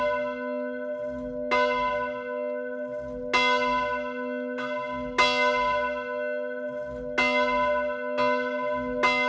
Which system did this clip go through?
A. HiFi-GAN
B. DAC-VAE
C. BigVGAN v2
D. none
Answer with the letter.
D